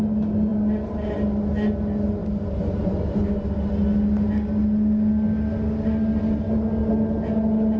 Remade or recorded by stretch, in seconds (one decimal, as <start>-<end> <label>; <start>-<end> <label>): 0.0-7.8 recorded